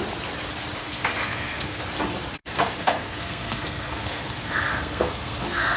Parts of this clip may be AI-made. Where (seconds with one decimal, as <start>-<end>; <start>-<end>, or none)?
0.8-1.8; 2.4-5.8